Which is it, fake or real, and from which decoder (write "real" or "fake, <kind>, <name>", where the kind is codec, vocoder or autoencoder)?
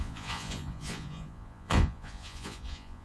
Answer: fake, vocoder, Vocos